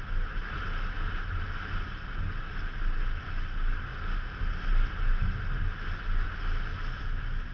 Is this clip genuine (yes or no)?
yes